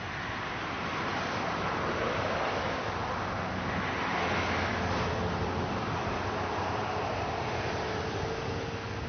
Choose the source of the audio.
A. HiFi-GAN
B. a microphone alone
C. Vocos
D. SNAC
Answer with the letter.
B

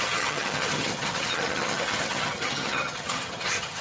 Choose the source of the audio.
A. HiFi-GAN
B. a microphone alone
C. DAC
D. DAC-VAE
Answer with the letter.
A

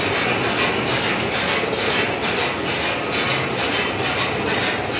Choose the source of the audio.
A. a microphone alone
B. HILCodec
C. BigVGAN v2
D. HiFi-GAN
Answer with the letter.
A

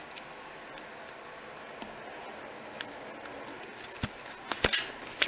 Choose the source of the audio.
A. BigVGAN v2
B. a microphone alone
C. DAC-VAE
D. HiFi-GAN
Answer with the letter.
B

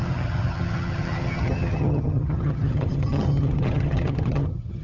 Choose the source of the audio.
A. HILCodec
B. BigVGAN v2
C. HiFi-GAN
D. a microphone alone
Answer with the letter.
C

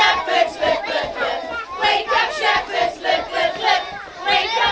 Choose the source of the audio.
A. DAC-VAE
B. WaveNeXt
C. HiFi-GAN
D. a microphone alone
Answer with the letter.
D